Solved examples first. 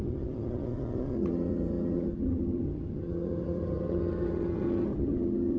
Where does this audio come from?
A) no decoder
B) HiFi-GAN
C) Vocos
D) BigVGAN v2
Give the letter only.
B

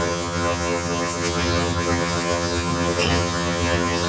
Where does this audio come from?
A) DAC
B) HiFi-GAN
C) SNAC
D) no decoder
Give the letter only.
B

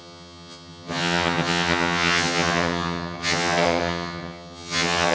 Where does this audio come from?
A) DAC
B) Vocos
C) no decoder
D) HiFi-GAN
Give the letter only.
D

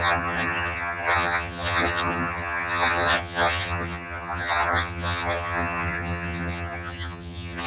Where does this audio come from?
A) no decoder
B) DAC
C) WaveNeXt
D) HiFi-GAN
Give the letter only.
D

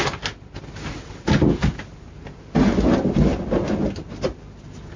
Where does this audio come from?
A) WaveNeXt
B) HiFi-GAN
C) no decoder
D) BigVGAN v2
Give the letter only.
C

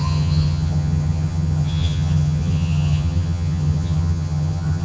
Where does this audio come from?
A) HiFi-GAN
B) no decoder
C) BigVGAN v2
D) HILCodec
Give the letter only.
A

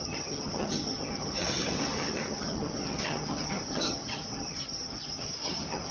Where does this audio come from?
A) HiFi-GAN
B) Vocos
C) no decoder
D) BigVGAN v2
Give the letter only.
A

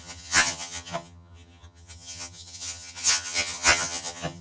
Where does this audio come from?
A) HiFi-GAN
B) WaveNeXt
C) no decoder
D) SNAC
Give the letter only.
A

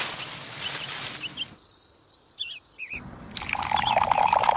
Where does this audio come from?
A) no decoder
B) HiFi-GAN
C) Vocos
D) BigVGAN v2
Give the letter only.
A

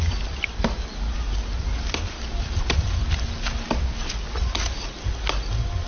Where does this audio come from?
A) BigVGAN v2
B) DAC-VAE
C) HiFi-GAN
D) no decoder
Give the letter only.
D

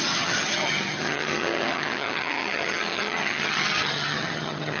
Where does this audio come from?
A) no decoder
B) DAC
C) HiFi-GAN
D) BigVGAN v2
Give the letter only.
C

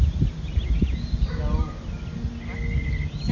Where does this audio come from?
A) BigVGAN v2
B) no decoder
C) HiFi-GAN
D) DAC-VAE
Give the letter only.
B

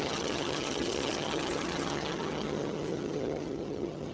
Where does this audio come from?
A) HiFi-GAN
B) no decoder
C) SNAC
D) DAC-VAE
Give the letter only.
A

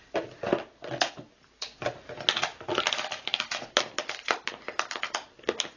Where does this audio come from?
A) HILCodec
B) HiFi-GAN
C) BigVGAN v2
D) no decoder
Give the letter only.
D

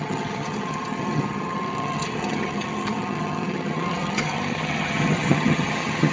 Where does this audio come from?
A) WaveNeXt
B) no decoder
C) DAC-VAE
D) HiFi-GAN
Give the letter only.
D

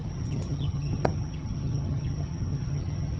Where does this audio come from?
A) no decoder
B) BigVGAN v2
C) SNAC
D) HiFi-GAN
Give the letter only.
D